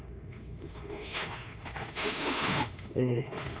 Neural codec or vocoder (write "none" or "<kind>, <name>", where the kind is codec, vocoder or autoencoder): autoencoder, DAC-VAE